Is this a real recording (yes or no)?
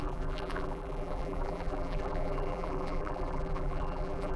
no